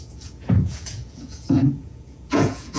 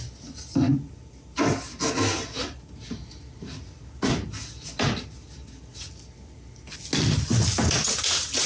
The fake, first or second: first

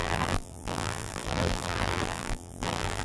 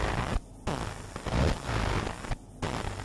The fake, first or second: first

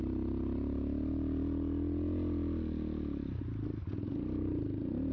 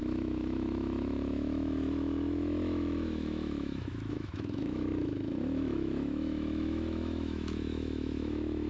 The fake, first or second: second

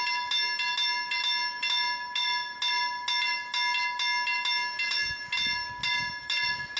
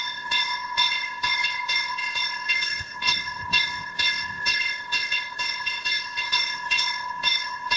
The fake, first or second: second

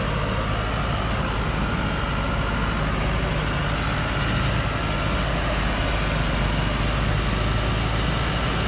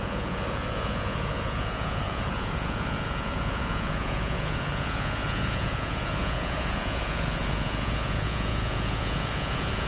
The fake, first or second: second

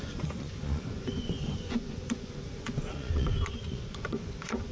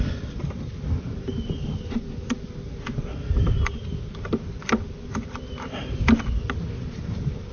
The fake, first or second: first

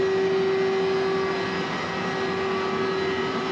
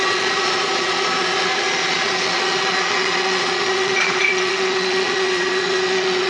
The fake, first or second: second